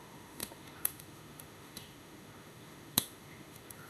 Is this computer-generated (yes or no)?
yes